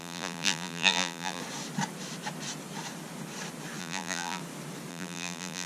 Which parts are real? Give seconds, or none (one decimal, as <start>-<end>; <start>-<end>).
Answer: 1.4-3.8; 4.4-4.9